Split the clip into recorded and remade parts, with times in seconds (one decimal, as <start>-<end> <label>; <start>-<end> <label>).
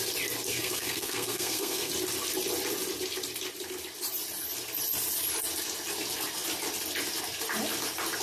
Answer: 0.0-0.5 recorded; 0.5-1.9 remade; 1.9-8.2 recorded